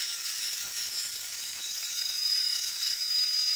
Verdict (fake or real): fake